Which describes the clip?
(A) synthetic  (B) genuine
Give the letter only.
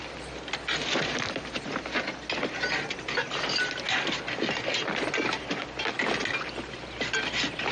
B